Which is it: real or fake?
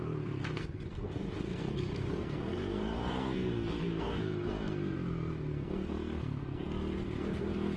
fake